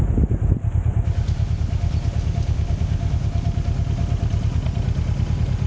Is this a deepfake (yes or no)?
no